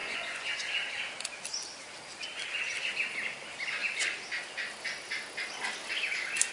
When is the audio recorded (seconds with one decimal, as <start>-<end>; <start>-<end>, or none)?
0.7-6.5